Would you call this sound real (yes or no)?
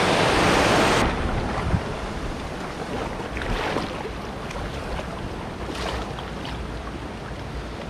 yes